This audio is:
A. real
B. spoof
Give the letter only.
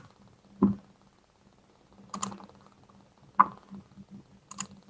A